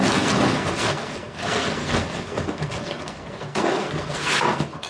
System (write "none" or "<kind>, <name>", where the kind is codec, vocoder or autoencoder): codec, SNAC